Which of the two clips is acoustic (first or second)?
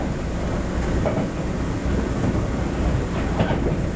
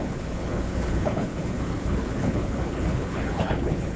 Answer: first